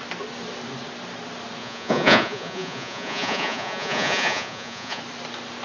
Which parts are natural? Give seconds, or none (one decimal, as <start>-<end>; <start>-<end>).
0.0-1.6; 5.0-5.6